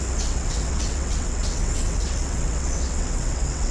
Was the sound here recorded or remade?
remade